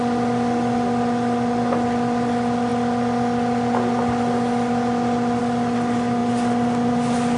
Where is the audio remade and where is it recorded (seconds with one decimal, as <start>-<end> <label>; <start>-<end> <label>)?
0.0-7.4 recorded